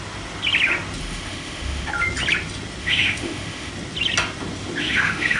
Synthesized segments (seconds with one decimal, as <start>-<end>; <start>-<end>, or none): 1.0-1.9; 2.8-3.7; 4.8-5.4